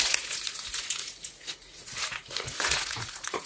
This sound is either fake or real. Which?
fake